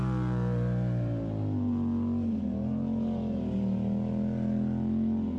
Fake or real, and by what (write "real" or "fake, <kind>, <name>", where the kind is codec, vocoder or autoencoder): real